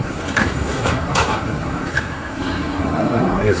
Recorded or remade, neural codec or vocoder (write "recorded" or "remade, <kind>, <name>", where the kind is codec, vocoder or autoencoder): remade, codec, SNAC